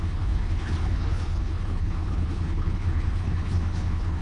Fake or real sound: fake